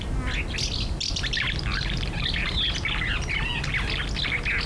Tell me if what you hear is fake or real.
real